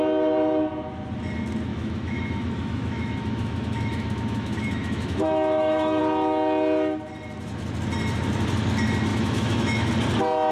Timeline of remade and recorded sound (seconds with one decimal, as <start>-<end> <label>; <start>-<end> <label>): 0.0-1.7 recorded; 1.7-6.0 remade; 6.0-9.1 recorded; 9.1-9.9 remade; 9.9-10.5 recorded